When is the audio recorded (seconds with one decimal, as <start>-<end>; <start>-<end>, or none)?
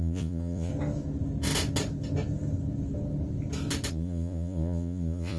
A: 0.7-3.9